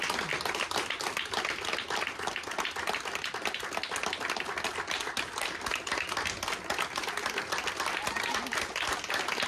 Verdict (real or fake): real